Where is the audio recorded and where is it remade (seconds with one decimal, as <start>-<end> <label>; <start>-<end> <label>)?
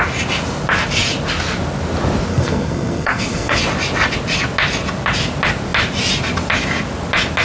0.0-2.3 recorded; 2.3-3.6 remade; 3.6-7.4 recorded